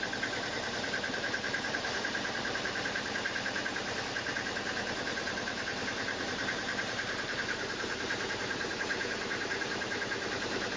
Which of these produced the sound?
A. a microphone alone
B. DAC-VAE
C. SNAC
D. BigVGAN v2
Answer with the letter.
D